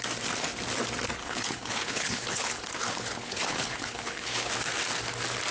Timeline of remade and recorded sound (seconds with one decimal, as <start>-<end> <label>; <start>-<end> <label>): 0.0-1.2 recorded; 1.2-4.5 remade; 4.5-5.5 recorded